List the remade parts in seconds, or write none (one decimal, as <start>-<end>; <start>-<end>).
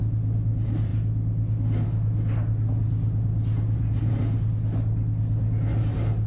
none